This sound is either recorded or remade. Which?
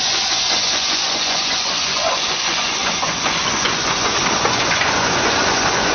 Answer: remade